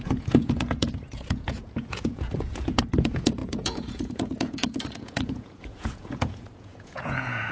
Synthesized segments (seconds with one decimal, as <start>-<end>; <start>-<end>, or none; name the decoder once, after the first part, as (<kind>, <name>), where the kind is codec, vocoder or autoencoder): 0.0-7.5 (vocoder, Vocos)